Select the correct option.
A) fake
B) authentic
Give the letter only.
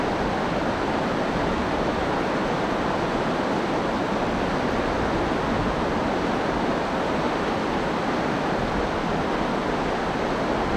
B